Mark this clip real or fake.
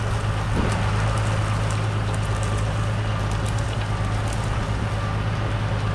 real